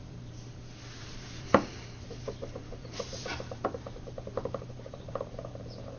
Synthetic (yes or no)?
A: yes